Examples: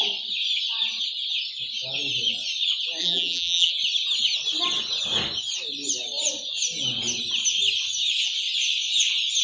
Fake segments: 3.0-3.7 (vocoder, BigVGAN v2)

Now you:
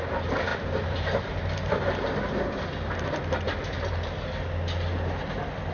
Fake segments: 0.5-3.9 (vocoder, BigVGAN v2)

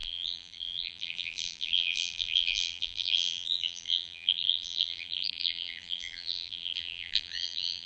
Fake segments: 0.0-7.9 (vocoder, BigVGAN v2)

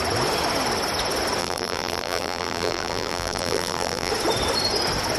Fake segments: 1.4-4.1 (vocoder, BigVGAN v2)

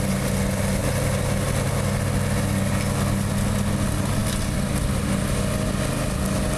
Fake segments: 4.2-5.0 (vocoder, BigVGAN v2)

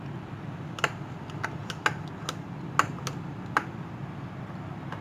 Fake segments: none

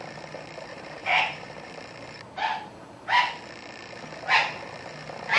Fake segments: 0.7-1.7 (vocoder, BigVGAN v2)